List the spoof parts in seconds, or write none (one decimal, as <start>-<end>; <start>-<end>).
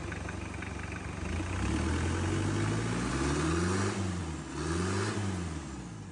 none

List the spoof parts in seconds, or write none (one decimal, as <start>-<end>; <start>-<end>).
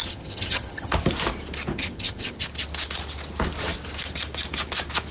0.0-0.9; 1.7-2.4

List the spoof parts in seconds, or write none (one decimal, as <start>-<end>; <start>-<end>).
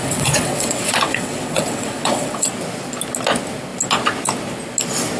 0.0-2.5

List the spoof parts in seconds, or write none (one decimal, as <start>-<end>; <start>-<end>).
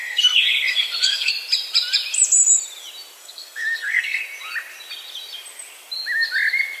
0.0-1.3; 3.2-4.2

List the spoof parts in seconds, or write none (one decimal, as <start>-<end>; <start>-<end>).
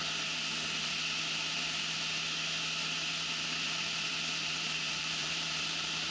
4.1-6.1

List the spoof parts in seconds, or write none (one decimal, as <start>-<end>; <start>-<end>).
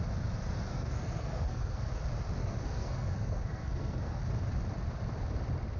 0.7-1.9; 2.4-4.2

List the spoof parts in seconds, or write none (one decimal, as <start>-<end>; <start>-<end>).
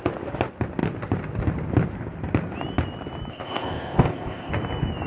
3.3-4.5